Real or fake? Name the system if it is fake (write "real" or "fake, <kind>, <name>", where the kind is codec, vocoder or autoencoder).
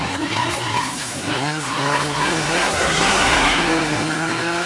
fake, codec, SNAC